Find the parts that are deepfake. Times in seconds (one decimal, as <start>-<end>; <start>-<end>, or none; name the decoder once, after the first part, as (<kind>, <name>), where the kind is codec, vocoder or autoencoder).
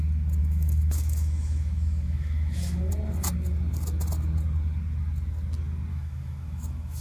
0.4-2.9 (autoencoder, DAC-VAE); 5.9-7.0